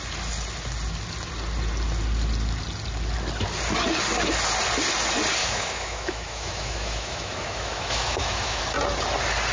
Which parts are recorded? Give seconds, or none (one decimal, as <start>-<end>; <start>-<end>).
0.0-5.4; 8.6-9.5